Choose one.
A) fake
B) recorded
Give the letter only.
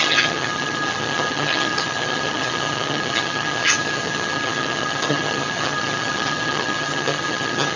A